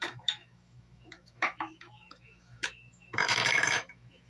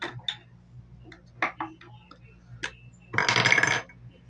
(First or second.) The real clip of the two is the second